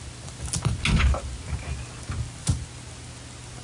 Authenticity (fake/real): real